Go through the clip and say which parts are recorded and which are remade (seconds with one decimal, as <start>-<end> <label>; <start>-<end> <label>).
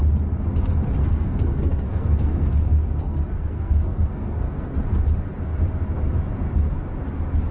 0.0-1.0 recorded; 1.0-4.8 remade; 4.8-7.5 recorded